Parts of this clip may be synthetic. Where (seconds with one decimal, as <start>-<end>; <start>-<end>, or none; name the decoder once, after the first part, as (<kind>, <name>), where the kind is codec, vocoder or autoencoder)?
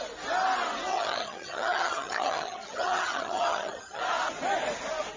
0.9-4.0 (vocoder, HiFi-GAN)